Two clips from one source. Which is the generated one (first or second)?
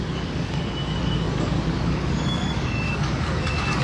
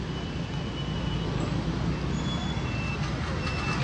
first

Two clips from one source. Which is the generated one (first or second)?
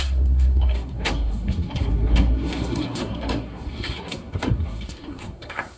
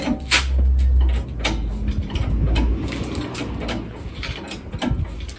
first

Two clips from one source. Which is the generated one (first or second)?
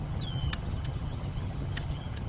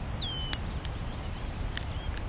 first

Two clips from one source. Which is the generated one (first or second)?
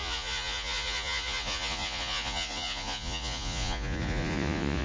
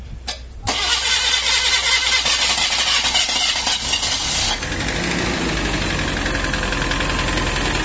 first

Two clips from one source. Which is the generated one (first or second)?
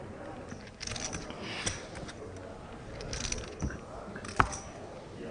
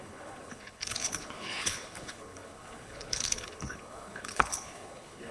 second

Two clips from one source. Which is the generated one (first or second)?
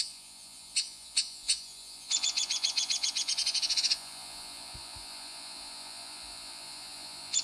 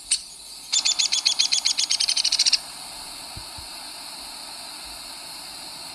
first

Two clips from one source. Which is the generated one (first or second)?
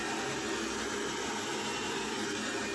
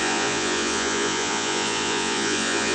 second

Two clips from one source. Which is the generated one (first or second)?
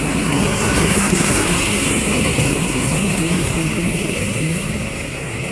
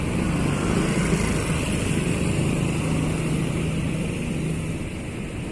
first